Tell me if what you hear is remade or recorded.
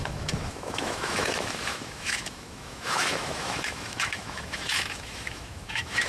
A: remade